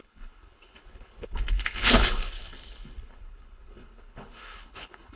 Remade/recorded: remade